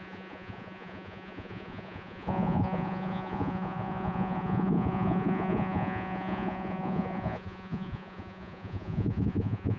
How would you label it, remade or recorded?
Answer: remade